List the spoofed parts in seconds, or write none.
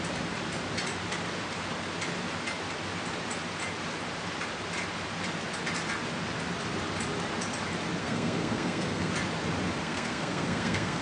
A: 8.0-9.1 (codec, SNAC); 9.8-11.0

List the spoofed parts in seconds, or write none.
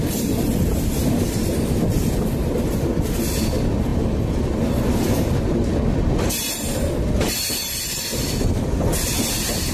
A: none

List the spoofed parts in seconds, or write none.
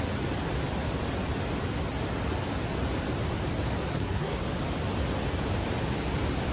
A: 3.9-4.4 (codec, SNAC)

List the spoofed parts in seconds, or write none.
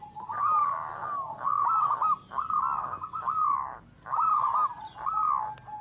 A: none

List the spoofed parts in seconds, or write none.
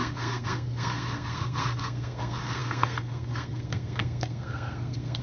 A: 0.0-5.2 (codec, SNAC)